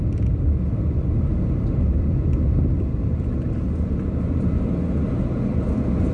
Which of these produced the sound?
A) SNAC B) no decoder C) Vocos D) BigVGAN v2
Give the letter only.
B